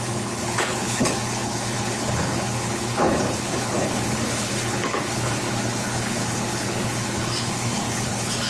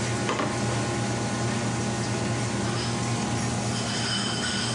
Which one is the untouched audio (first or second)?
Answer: second